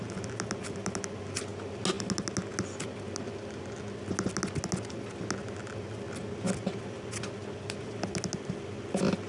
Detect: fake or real real